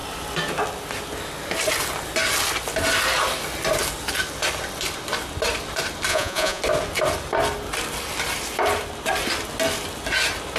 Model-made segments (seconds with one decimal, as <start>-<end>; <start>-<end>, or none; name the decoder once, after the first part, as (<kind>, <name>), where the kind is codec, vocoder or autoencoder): 6.1-6.6 (vocoder, Vocos)

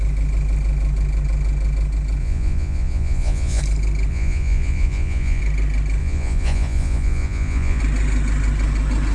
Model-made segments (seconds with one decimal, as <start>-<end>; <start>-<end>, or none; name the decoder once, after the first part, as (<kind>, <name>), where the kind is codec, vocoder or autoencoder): 2.2-3.6 (vocoder, Vocos); 4.1-5.4; 6.0-7.8

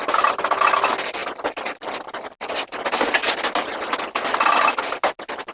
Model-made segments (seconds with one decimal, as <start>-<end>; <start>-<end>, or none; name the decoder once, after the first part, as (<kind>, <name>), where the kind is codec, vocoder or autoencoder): none

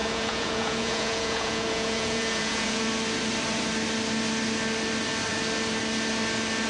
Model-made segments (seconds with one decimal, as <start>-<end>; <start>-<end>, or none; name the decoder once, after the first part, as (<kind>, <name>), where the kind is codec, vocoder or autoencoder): 0.0-2.8 (vocoder, Vocos)